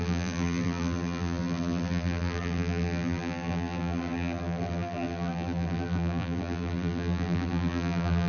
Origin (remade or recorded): remade